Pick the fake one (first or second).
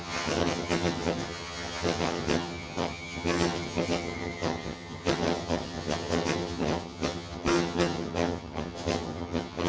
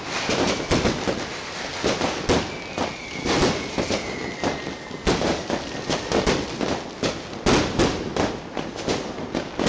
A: first